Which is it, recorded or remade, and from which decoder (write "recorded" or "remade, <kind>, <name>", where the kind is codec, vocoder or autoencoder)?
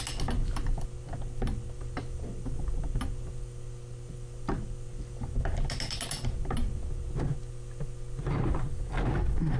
recorded